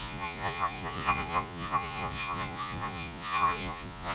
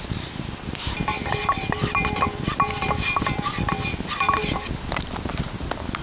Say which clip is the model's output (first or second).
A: first